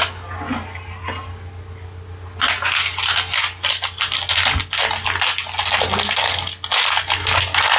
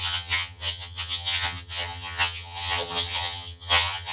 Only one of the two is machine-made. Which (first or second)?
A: second